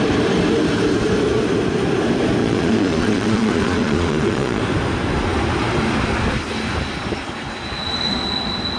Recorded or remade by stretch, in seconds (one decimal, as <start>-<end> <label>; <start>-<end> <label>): 0.0-2.4 recorded; 2.4-4.6 remade; 4.6-8.8 recorded